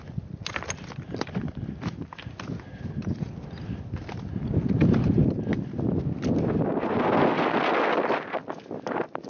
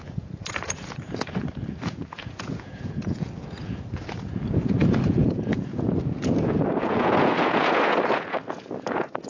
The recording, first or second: first